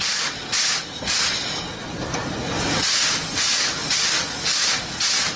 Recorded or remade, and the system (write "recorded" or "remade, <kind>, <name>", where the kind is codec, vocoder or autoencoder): recorded